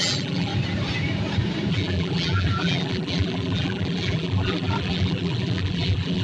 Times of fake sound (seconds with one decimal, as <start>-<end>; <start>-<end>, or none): 0.0-0.5; 1.7-6.2